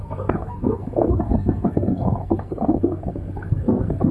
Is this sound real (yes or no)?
no